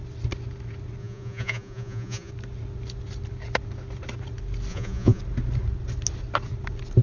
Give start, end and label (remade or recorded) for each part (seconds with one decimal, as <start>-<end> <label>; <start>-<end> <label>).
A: 0.0-1.0 recorded; 1.0-2.3 remade; 2.3-4.7 recorded; 4.7-5.2 remade; 5.2-7.0 recorded